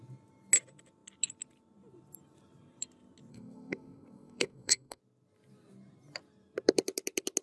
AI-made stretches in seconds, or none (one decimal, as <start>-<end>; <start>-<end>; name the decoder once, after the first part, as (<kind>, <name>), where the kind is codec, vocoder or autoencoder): 3.3-5.0 (codec, SNAC)